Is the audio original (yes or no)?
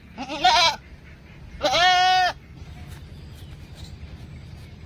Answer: yes